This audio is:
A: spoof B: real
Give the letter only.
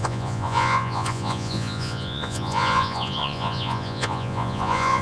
A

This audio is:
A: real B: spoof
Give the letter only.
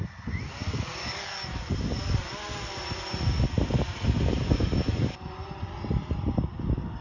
A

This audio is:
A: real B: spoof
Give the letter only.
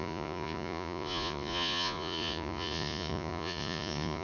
B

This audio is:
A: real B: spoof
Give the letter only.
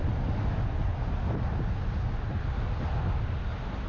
A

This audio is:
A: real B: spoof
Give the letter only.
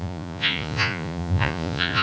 B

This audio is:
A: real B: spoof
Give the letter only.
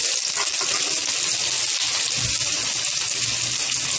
A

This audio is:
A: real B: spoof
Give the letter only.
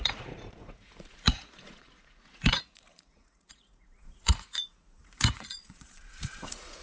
B